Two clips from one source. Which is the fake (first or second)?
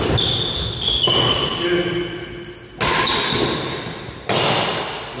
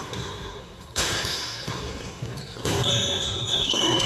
second